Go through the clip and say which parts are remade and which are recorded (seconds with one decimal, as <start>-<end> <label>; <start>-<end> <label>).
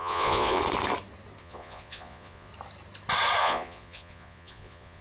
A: 0.0-0.6 remade; 0.6-1.4 recorded; 1.4-2.5 remade; 2.5-3.4 recorded; 3.4-5.0 remade